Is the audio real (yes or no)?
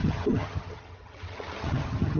no